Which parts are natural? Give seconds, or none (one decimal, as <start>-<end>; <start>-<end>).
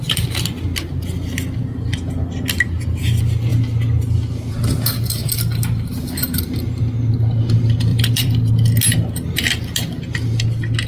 0.0-7.9; 8.5-10.9